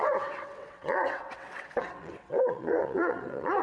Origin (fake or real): fake